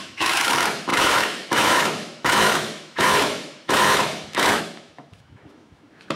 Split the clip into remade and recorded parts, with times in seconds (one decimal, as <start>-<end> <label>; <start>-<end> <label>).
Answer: 0.0-6.2 remade